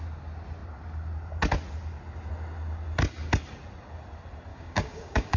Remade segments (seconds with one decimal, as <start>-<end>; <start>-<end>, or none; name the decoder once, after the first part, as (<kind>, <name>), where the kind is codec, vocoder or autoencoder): 4.5-5.4 (codec, DAC)